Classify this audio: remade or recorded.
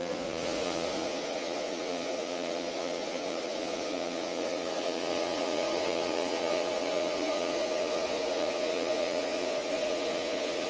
remade